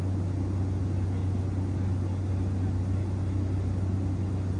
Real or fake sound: real